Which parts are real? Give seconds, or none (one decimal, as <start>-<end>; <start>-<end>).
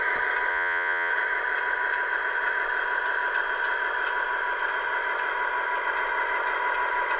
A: 0.0-0.5; 1.1-7.2